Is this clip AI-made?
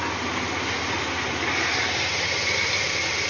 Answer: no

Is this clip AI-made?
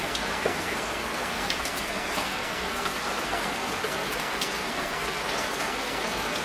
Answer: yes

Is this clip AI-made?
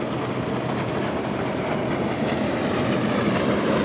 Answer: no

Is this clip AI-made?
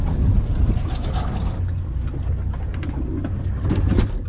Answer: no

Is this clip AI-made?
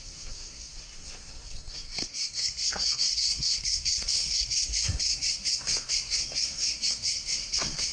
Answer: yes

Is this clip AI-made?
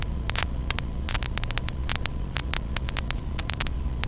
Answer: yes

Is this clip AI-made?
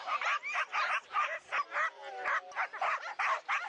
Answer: no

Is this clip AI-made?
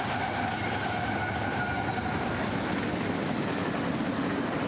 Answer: no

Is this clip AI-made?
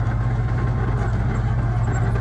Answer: no